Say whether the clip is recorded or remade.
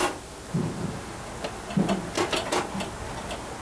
recorded